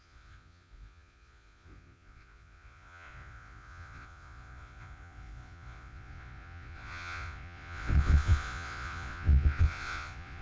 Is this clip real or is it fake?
fake